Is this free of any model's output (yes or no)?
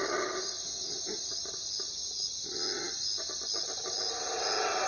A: yes